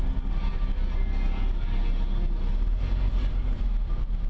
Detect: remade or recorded recorded